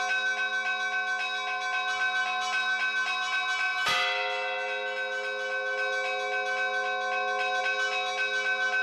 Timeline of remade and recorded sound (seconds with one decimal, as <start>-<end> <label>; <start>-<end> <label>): 0.0-8.8 recorded